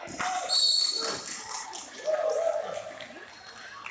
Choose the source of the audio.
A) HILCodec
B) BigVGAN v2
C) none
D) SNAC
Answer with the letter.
C